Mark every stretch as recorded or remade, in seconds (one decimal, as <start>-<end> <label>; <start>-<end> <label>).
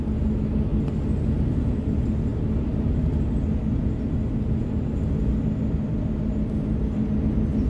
0.0-7.7 recorded